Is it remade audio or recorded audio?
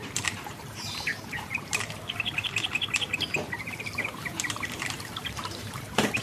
remade